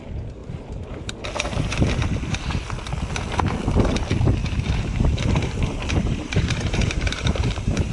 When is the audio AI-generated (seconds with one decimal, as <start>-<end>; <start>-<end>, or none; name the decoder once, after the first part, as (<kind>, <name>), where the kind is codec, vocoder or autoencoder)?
0.4-1.9 (vocoder, BigVGAN v2); 4.4-7.9